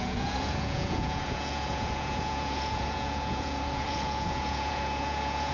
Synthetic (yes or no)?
yes